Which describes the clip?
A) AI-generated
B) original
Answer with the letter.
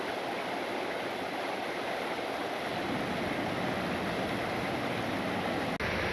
B